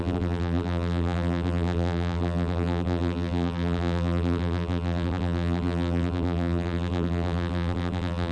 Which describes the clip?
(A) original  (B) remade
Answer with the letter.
B